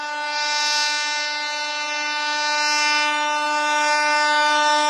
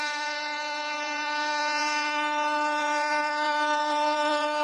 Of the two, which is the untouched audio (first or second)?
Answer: first